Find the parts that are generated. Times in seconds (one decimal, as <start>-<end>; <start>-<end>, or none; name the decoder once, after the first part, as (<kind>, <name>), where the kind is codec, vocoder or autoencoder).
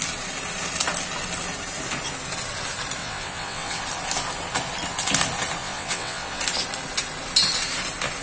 3.0-3.8 (vocoder, WaveNeXt); 5.6-6.4